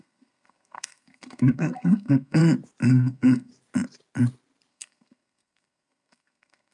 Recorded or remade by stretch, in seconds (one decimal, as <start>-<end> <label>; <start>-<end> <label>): 0.0-2.4 remade; 2.4-2.9 recorded; 2.9-3.5 remade; 3.5-4.7 recorded; 4.7-6.7 remade